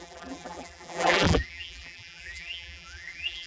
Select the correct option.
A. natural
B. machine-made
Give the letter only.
B